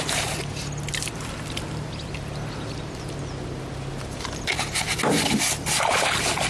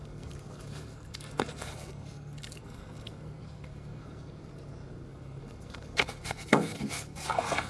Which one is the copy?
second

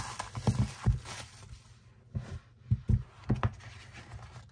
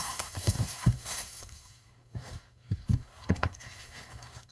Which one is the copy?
second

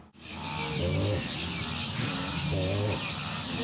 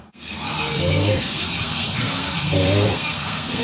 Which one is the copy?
second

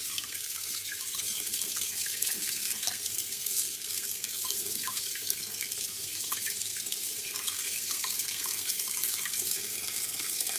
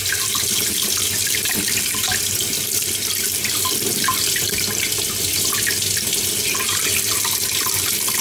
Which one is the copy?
first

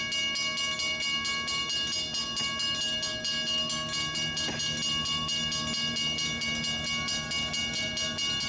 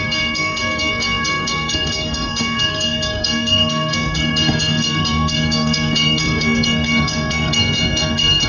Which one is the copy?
second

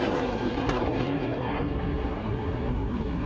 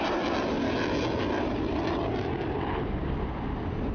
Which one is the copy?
first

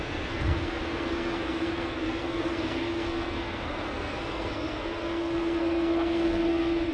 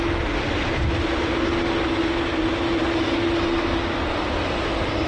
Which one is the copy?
first